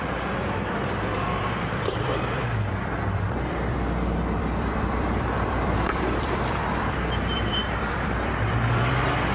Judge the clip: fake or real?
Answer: fake